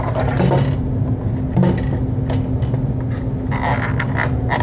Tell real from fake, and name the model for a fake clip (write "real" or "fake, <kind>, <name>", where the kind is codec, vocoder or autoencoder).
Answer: real